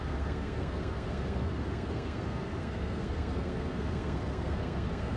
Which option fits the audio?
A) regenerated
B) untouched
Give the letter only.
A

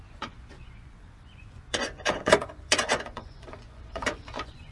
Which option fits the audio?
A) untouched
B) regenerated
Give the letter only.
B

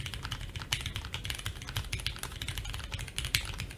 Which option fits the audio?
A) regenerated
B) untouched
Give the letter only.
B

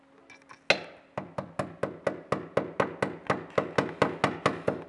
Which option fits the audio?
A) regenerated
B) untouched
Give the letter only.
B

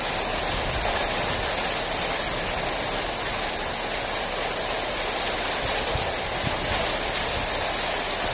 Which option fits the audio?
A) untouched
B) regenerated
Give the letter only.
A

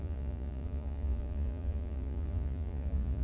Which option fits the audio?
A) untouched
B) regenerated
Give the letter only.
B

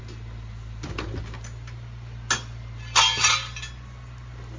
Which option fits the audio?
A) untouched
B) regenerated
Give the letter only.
A